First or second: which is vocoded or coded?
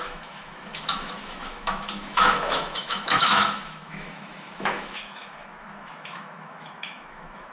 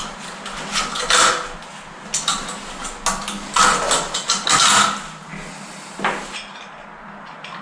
first